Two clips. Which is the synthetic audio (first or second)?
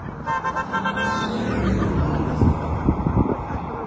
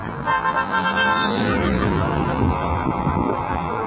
second